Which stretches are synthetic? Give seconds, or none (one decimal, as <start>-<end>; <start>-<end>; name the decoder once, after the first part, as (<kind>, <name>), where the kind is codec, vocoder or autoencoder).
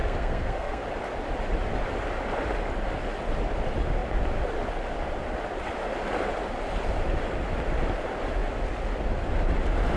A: 0.0-0.8 (codec, SNAC)